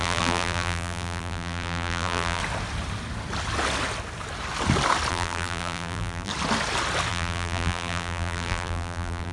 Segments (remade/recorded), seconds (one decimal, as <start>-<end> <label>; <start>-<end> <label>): 0.0-2.4 remade; 2.4-5.1 recorded; 5.1-6.3 remade; 6.3-7.1 recorded; 7.1-9.3 remade